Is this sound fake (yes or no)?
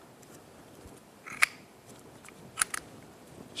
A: yes